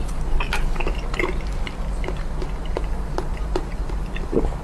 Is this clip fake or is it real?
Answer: real